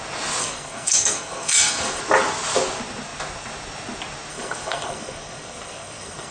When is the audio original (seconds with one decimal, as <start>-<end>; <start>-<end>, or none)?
0.0-0.4; 2.0-4.3